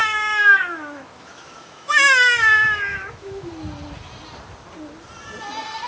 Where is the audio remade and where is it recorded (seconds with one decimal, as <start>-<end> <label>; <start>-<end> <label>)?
0.0-3.5 remade; 3.5-5.9 recorded